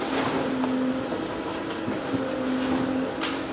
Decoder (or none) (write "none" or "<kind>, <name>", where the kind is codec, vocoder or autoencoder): none